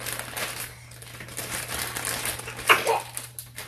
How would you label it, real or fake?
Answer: real